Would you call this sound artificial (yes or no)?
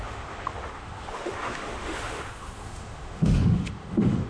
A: yes